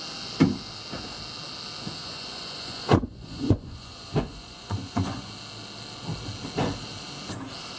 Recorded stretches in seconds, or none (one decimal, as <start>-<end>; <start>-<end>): 0.0-2.0; 5.3-7.8